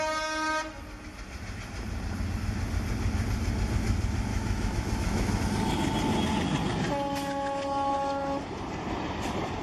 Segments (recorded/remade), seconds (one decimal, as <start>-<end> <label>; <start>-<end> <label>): 0.0-4.3 recorded; 4.3-5.4 remade; 5.4-9.6 recorded